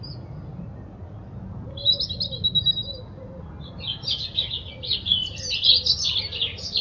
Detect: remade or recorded recorded